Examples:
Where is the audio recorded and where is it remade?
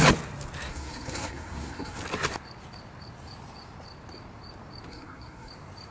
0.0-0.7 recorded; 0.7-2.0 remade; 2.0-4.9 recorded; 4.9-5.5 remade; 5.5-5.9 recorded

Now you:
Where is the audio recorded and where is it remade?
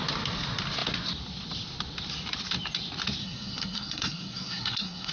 0.0-3.2 recorded; 3.2-5.1 remade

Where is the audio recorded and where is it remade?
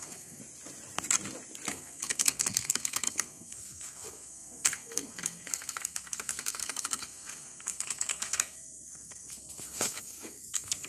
0.0-0.4 remade; 0.4-1.7 recorded; 1.7-10.9 remade